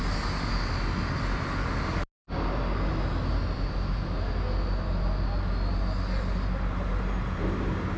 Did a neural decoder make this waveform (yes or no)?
no